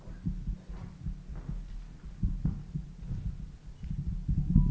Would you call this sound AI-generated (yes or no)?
no